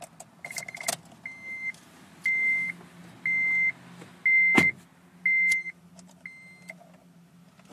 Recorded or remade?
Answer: recorded